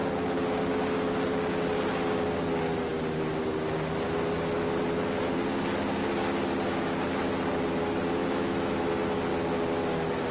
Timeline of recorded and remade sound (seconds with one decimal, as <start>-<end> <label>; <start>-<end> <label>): 0.0-8.2 recorded; 8.2-8.9 remade; 8.9-10.3 recorded